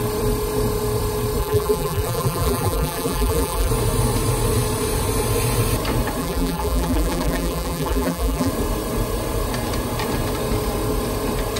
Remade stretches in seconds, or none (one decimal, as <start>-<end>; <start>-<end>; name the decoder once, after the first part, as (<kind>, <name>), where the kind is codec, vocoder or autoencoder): 1.4-3.7 (vocoder, BigVGAN v2); 6.2-8.5